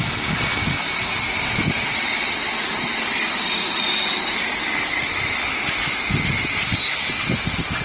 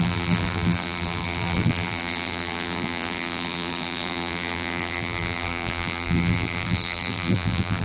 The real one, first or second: first